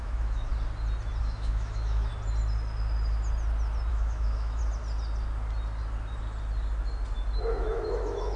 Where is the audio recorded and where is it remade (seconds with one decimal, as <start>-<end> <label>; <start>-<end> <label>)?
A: 0.0-0.5 remade; 0.5-1.2 recorded; 1.2-2.1 remade; 2.1-3.9 recorded; 3.9-4.6 remade; 4.6-7.5 recorded; 7.5-8.4 remade